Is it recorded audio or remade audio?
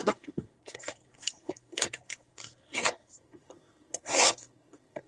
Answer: remade